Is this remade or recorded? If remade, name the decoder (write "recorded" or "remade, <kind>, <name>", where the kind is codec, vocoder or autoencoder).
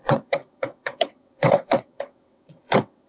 remade, vocoder, WaveNeXt